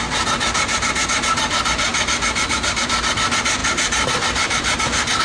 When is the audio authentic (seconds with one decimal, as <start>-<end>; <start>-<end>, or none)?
0.0-5.2